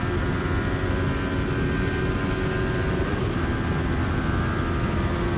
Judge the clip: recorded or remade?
recorded